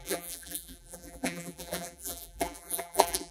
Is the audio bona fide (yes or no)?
no